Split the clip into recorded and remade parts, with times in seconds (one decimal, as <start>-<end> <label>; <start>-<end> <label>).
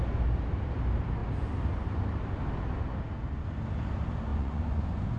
0.0-4.3 recorded; 4.3-5.2 remade